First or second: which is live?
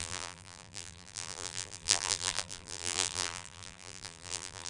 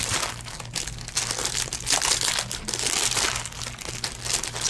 second